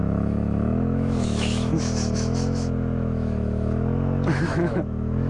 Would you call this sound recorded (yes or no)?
no